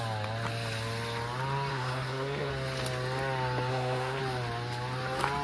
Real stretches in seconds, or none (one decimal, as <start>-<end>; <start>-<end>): 0.0-1.7; 2.5-3.7; 4.2-5.4